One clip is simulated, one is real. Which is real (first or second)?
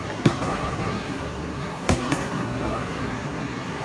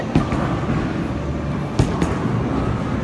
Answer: second